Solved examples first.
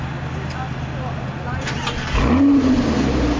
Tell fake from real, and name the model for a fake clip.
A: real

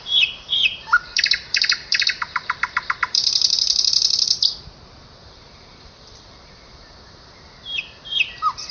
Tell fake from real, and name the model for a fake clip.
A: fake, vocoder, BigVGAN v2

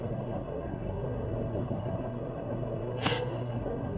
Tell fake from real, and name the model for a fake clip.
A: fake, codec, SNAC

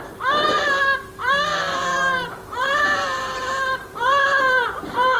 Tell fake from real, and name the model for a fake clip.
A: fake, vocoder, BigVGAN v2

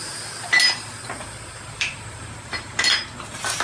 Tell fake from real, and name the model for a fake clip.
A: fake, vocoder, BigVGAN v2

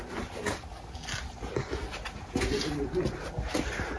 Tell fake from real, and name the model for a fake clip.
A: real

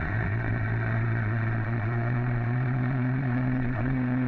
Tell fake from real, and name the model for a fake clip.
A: fake, vocoder, Vocos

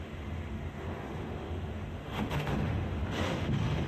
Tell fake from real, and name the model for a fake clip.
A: fake, autoencoder, DAC-VAE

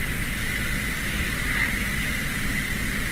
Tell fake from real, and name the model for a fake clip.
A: real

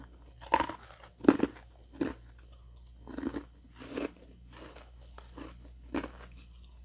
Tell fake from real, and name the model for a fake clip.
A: real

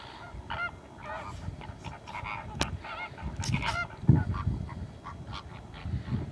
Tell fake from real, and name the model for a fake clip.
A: real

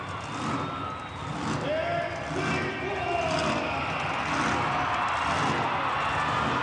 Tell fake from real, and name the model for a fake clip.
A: real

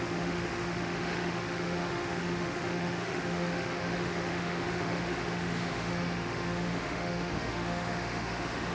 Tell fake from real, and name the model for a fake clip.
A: fake, autoencoder, DAC-VAE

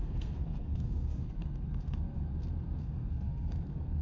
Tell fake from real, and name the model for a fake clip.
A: fake, codec, SNAC